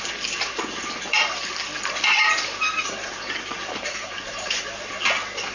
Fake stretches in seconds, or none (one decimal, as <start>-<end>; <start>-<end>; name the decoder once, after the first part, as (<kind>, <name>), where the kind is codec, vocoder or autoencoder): 0.8-1.5 (vocoder, BigVGAN v2); 3.6-4.6

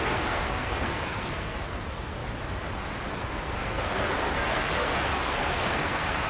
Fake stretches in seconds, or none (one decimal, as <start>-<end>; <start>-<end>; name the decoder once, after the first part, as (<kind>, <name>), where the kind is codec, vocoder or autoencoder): 0.0-2.2 (codec, SNAC); 3.1-6.3

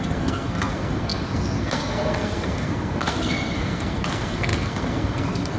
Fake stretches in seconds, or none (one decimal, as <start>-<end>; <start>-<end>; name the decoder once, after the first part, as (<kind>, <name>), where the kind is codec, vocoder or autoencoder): 0.0-5.6 (codec, SNAC)

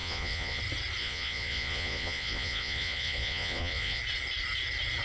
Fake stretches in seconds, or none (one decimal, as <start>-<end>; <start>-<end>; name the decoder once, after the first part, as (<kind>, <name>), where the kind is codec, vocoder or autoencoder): 0.0-0.6 (vocoder, Vocos); 1.0-4.0

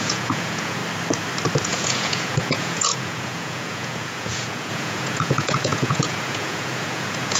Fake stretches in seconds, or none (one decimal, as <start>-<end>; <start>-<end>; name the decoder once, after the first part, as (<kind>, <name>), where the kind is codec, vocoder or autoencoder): 0.0-0.8 (vocoder, Vocos); 1.6-7.4

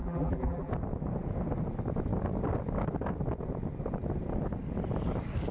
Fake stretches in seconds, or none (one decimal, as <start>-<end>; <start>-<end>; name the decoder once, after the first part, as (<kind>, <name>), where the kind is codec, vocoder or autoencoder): 0.0-0.7 (vocoder, BigVGAN v2)

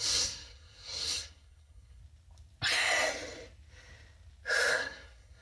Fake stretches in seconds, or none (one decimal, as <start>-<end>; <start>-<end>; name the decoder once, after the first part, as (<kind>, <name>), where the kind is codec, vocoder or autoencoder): 0.0-2.0 (codec, SNAC); 4.7-5.4